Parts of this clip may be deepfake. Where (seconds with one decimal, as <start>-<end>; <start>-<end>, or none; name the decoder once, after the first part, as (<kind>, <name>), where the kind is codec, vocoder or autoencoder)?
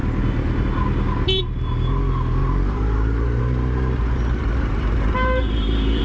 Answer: 2.4-3.4 (vocoder, BigVGAN v2); 4.4-6.0